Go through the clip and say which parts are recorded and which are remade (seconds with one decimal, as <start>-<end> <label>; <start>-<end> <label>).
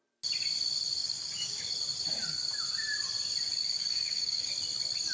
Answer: 0.0-1.0 recorded; 1.0-1.7 remade; 1.7-3.6 recorded; 3.6-4.5 remade; 4.5-5.1 recorded